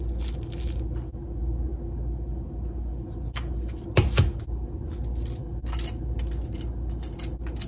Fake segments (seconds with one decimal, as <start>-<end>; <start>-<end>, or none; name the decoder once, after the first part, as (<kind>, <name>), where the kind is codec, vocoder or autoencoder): none